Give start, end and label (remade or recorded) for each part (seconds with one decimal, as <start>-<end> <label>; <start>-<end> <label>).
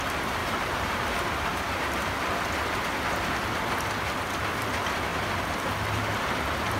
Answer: 0.0-0.4 recorded; 0.4-1.6 remade; 1.6-6.8 recorded